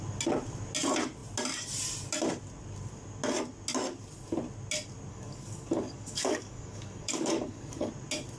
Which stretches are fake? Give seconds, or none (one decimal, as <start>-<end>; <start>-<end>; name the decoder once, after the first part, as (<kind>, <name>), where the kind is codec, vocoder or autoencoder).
5.1-7.9 (codec, DAC)